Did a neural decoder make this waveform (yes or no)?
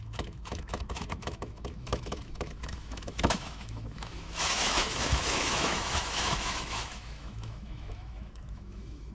yes